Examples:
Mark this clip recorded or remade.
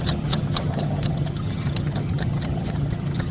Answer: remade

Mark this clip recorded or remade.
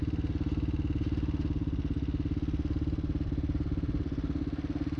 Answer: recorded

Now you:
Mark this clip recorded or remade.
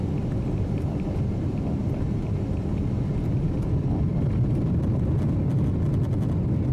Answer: remade